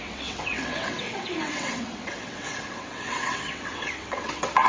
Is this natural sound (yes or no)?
no